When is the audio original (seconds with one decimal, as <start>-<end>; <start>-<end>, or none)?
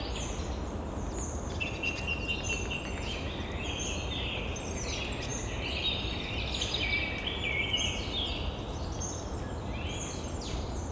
0.0-10.9